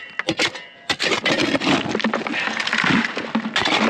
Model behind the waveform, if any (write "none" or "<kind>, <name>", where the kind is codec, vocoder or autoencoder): none